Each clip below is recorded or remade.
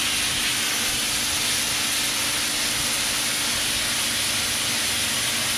recorded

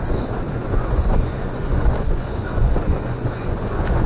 remade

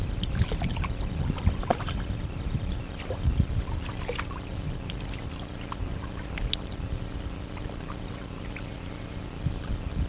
recorded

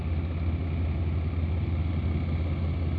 recorded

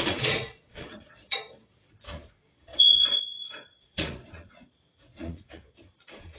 remade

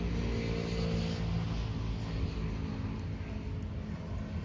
recorded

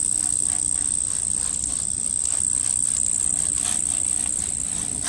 recorded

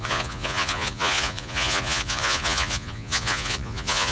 remade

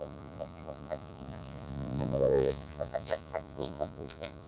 remade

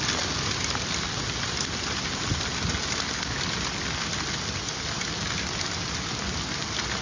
recorded